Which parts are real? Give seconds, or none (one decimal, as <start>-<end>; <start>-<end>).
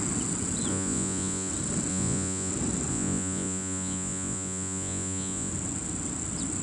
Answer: 0.0-0.7; 1.5-1.9; 2.5-2.9; 5.5-6.6